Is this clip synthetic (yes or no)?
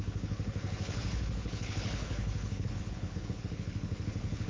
yes